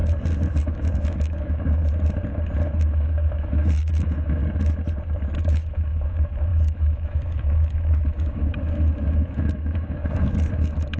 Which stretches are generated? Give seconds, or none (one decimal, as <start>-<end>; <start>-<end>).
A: 0.6-1.8; 2.9-4.4; 5.4-11.0